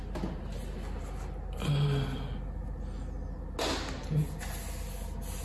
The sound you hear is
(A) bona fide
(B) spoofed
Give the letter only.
A